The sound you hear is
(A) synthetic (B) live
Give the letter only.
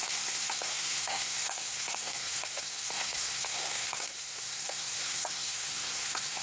A